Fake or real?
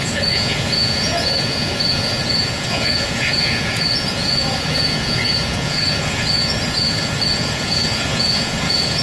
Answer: fake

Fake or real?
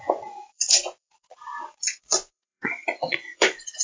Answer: fake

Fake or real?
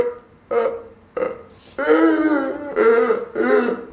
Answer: real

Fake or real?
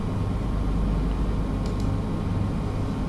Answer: real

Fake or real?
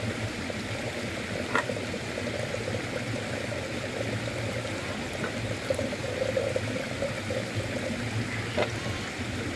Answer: real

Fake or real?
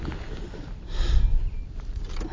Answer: real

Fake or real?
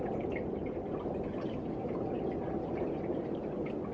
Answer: real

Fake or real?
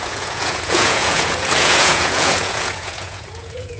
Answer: fake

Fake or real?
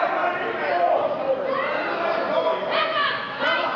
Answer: real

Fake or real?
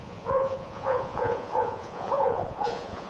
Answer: fake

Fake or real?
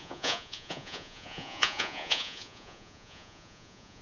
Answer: fake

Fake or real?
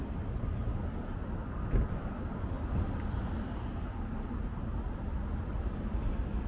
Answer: real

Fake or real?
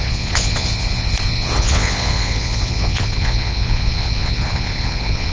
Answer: fake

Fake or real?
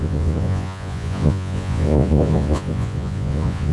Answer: fake